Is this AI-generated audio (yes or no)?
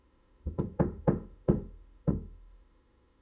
yes